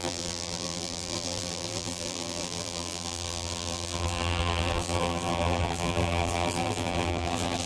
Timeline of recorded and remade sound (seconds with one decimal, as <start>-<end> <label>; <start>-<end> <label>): 0.0-7.7 remade